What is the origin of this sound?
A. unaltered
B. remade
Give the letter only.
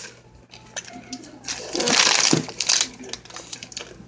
A